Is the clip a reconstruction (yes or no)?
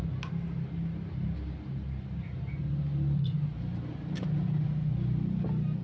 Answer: no